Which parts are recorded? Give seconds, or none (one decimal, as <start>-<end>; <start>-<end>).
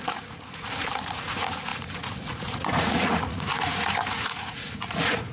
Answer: none